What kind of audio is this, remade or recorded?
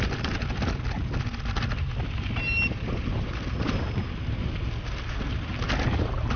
recorded